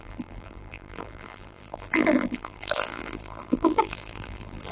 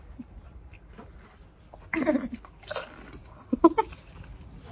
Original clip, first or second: second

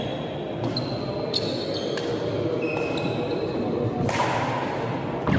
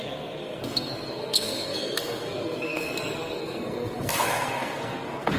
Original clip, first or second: first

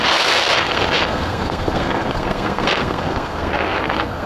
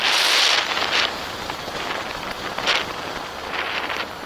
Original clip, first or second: second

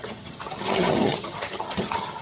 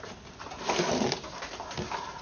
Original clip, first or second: second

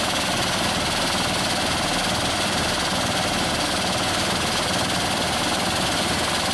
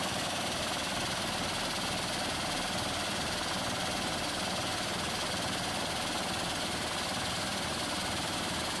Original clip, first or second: first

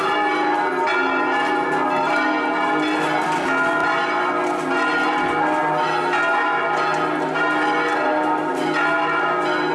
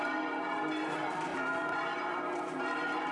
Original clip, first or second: first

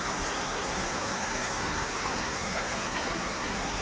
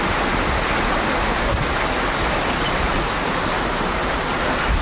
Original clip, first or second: second